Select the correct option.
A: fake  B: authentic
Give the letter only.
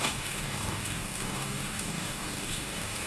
A